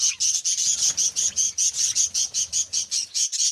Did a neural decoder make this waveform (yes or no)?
no